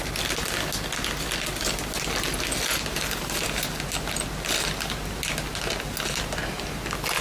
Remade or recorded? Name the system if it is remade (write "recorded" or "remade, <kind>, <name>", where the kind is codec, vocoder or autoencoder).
recorded